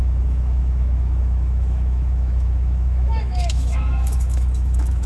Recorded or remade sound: remade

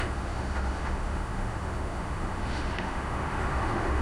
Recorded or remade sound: remade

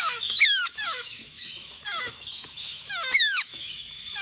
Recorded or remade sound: remade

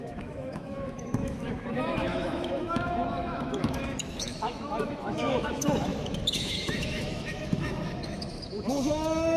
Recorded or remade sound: remade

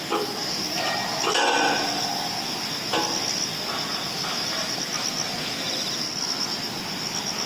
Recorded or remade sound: recorded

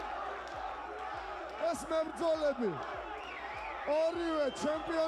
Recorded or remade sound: recorded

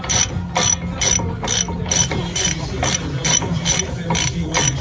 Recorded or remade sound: recorded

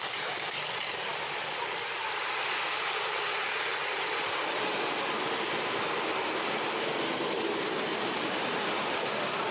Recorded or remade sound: recorded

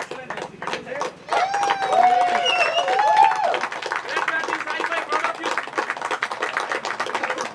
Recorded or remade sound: recorded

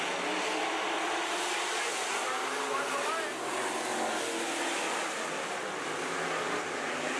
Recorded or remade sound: recorded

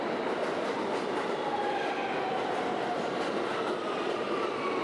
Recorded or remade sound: recorded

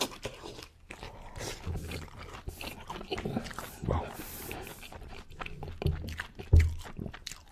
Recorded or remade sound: recorded